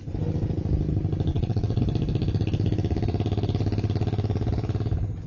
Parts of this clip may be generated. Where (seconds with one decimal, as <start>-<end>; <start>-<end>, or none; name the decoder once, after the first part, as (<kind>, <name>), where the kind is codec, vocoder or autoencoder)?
1.3-1.8 (vocoder, WaveNeXt)